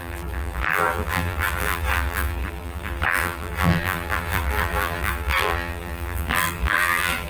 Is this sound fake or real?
fake